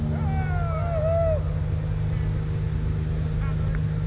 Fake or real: real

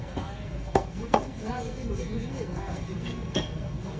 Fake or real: fake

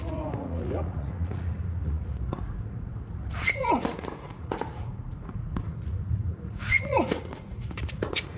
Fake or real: fake